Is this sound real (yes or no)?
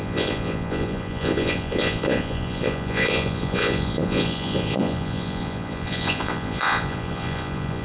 no